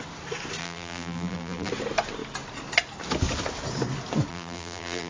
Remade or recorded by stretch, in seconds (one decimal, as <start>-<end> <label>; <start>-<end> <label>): 0.0-0.6 recorded; 0.6-1.7 remade; 1.7-4.3 recorded; 4.3-5.1 remade